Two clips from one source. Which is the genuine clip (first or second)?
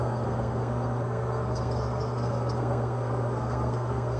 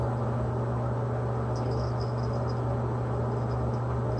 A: second